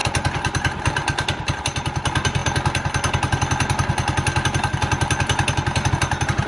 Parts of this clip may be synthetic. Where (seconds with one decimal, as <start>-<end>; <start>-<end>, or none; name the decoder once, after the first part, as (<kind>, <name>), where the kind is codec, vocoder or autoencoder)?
none

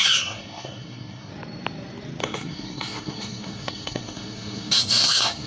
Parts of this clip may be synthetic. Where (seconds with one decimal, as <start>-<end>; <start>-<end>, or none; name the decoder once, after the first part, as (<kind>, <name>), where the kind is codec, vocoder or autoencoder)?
0.0-1.3 (codec, SNAC); 2.2-5.5

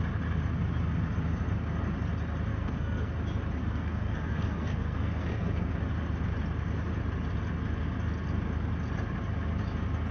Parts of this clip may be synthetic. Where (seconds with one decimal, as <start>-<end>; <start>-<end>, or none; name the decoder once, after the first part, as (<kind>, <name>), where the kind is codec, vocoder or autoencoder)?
2.5-3.1 (codec, SNAC); 3.6-5.7

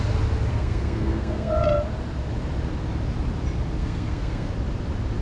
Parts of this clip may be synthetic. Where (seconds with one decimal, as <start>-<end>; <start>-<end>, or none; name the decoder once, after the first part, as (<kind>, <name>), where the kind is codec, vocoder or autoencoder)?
0.5-1.5 (codec, SNAC); 3.8-4.5

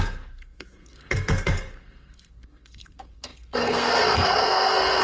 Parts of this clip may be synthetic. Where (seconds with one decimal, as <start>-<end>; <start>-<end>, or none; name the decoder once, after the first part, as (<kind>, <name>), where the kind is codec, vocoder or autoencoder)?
0.0-5.0 (codec, SNAC)

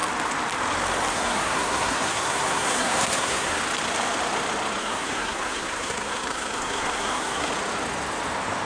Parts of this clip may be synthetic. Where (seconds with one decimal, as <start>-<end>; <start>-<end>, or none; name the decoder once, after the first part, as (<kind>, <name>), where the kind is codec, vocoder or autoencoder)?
1.1-3.6 (codec, SNAC); 4.8-7.5

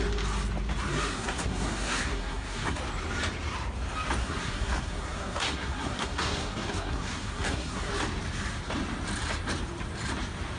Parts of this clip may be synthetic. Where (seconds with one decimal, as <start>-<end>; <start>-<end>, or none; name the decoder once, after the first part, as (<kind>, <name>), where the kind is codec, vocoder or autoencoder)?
0.9-2.8 (codec, SNAC); 4.2-7.9